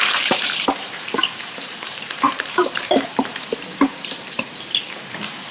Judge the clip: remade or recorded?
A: remade